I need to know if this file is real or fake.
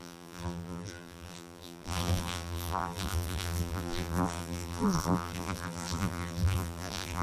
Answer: fake